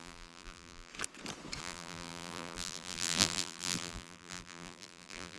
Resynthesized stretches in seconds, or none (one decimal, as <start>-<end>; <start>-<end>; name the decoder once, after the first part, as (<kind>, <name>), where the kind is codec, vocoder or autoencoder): 0.0-0.9 (vocoder, BigVGAN v2); 1.6-5.4